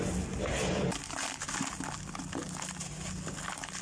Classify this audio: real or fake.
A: real